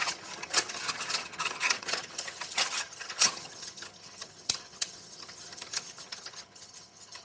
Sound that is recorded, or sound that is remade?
remade